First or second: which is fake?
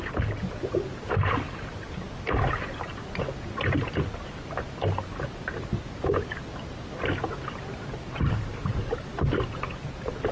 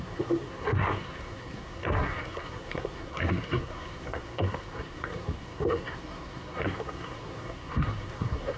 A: second